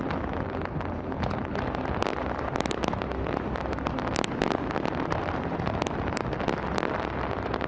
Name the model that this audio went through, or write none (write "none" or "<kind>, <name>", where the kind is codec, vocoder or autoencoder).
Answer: none